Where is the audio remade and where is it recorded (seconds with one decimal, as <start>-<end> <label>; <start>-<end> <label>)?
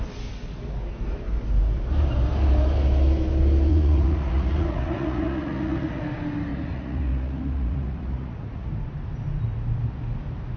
0.0-3.7 recorded; 3.7-6.0 remade; 6.0-6.5 recorded; 6.5-8.7 remade; 8.7-10.6 recorded